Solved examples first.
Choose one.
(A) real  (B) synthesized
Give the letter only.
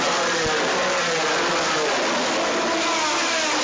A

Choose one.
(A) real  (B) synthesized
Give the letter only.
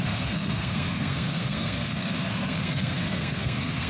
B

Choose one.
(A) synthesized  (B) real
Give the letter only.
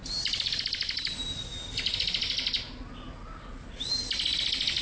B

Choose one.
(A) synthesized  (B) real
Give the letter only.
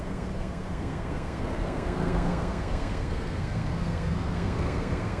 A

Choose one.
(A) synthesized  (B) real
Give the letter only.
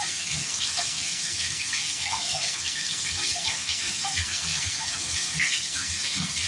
A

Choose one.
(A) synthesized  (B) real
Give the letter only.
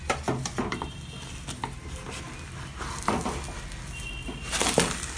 B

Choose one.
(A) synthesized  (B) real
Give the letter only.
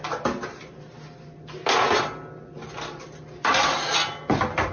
B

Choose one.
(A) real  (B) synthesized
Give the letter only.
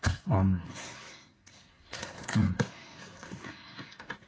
B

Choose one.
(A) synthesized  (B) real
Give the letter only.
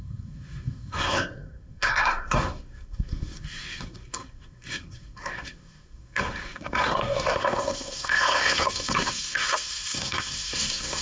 A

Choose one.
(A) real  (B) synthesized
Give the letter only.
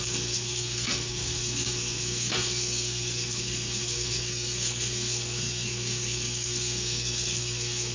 B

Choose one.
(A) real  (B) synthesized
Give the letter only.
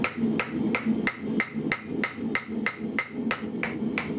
A